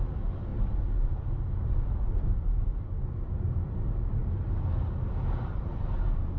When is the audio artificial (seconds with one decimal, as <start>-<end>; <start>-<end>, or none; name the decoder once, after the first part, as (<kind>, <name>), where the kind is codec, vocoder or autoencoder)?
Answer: 0.0-0.5 (vocoder, BigVGAN v2); 3.1-6.4